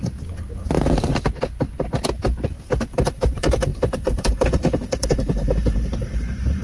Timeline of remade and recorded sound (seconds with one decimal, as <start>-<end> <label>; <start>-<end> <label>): 0.0-2.9 recorded; 2.9-6.6 remade